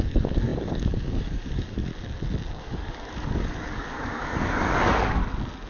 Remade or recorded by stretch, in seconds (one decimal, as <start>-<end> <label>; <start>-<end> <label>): 0.0-1.9 remade; 1.9-2.6 recorded; 2.6-5.2 remade; 5.2-5.7 recorded